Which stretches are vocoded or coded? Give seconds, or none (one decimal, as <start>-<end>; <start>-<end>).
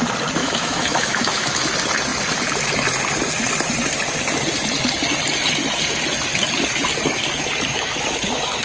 0.4-1.6; 7.7-8.6